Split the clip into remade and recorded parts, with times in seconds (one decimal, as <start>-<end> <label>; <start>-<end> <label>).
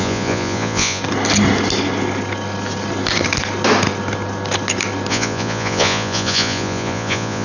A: 0.0-1.0 remade; 1.0-5.1 recorded; 5.1-7.4 remade